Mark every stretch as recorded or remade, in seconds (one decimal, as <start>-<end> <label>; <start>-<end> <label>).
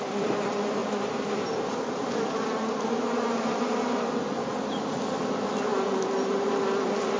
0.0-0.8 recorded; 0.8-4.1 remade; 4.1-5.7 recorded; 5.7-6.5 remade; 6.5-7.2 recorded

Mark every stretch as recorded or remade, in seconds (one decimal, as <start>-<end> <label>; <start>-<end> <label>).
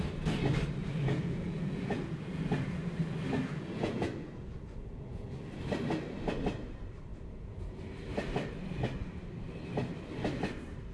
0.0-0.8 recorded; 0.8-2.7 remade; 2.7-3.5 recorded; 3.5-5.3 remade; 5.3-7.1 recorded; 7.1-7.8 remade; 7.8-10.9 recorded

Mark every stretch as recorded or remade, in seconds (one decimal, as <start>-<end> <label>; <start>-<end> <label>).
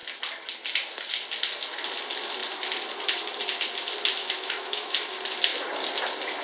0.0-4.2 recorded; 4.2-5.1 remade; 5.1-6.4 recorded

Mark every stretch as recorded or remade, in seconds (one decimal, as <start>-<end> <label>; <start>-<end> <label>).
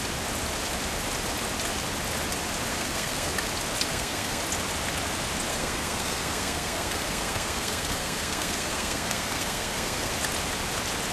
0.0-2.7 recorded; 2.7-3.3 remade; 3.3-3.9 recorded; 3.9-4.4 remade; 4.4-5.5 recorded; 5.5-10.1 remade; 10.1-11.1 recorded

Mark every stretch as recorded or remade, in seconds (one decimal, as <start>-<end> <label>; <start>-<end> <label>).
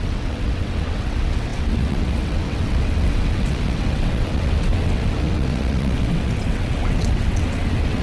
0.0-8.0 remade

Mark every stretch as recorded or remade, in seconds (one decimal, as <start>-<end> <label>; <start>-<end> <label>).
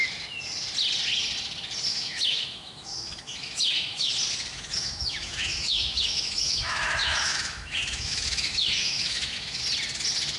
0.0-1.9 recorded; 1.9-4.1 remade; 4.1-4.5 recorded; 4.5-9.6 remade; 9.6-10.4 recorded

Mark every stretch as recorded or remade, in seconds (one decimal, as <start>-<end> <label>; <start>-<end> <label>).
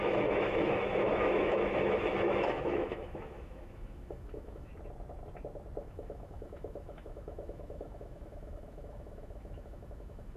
0.0-4.7 remade; 4.7-5.8 recorded; 5.8-10.4 remade